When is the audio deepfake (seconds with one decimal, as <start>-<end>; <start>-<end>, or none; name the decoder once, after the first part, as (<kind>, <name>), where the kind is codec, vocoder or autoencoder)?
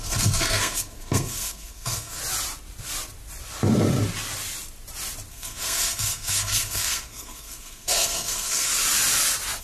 0.0-2.2 (codec, SNAC); 5.3-8.7